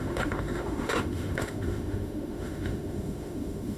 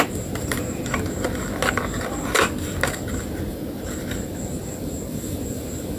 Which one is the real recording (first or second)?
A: second